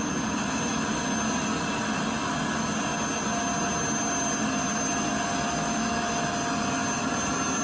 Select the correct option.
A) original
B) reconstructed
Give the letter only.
A